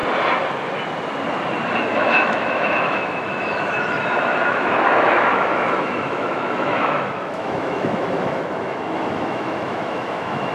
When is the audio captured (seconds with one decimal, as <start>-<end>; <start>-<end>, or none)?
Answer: 0.0-1.9